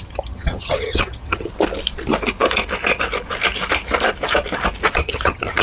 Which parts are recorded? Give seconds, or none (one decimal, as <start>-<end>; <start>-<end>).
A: 1.5-4.9